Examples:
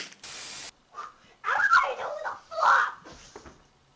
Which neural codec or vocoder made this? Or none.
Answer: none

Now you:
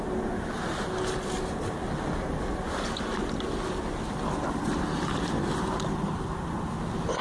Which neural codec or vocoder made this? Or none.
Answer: none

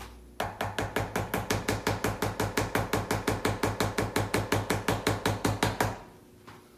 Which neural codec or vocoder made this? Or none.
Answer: none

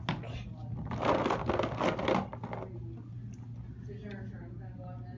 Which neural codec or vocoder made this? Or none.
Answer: none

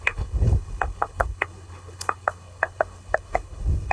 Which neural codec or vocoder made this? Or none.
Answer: codec, HILCodec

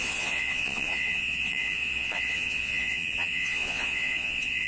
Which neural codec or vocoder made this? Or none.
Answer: vocoder, Vocos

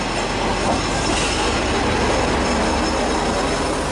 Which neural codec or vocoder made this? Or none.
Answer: none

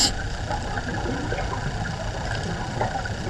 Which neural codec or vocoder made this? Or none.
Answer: none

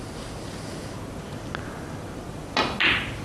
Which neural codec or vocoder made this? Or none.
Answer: none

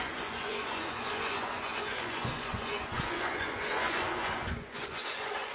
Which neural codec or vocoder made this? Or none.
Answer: vocoder, Vocos